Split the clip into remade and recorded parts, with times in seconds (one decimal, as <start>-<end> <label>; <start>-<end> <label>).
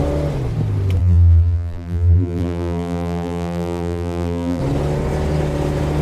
0.0-1.0 recorded; 1.0-4.6 remade; 4.6-6.0 recorded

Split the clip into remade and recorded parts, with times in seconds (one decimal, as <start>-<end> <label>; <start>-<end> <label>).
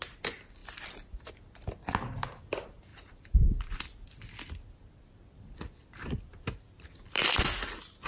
0.0-2.9 recorded; 2.9-3.7 remade; 3.7-6.3 recorded; 6.3-7.3 remade; 7.3-8.1 recorded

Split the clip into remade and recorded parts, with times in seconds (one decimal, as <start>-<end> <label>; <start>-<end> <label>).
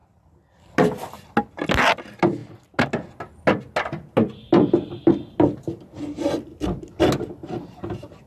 0.0-7.4 recorded; 7.4-8.3 remade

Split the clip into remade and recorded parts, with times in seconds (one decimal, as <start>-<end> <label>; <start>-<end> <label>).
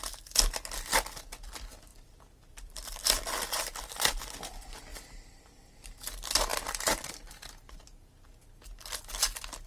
0.0-1.9 recorded; 1.9-4.2 remade; 4.2-4.9 recorded; 4.9-5.7 remade; 5.7-6.5 recorded; 6.5-7.5 remade; 7.5-9.7 recorded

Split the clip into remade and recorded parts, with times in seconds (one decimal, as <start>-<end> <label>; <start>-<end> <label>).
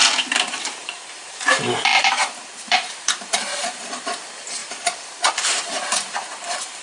0.0-0.6 recorded; 0.6-6.8 remade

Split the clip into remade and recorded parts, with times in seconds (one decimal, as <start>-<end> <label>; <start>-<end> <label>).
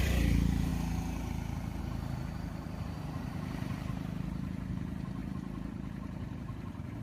0.0-0.7 remade; 0.7-1.8 recorded; 1.8-7.0 remade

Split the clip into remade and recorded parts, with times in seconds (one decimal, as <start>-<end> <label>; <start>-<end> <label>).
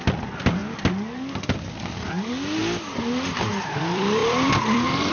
0.0-0.6 remade; 0.6-1.8 recorded; 1.8-2.6 remade; 2.6-3.8 recorded; 3.8-5.1 remade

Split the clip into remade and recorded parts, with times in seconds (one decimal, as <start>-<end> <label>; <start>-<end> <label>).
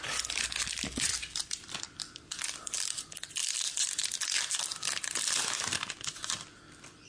0.0-3.4 remade; 3.4-6.3 recorded; 6.3-7.1 remade